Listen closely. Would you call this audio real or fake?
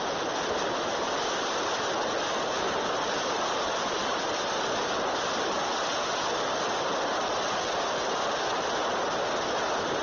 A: real